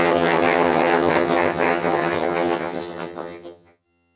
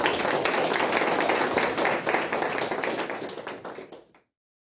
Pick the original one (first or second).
second